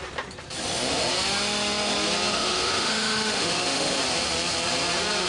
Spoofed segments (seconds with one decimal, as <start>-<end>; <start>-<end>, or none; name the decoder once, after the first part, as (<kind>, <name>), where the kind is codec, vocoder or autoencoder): 2.3-4.0 (autoencoder, DAC-VAE)